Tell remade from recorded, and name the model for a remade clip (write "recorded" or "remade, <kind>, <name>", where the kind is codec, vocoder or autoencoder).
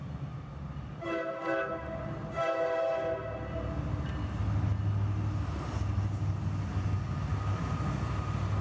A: recorded